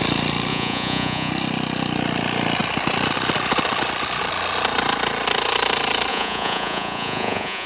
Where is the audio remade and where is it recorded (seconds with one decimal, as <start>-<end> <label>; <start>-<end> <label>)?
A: 0.0-0.5 recorded; 0.5-1.3 remade; 1.3-6.1 recorded; 6.1-7.7 remade